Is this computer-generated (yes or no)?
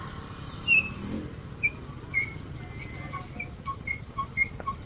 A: no